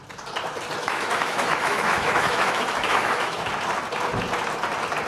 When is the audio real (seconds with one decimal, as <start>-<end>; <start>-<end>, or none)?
0.0-0.8; 3.5-5.1